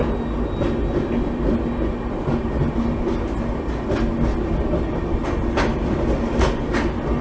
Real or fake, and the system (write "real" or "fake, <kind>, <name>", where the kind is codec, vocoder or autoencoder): real